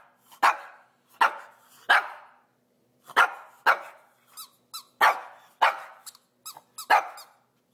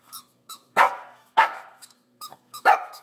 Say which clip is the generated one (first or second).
second